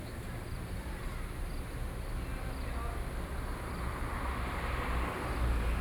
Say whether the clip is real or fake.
real